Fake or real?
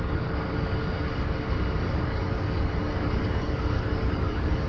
fake